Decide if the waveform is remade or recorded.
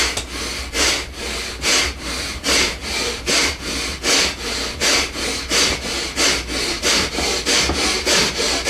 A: recorded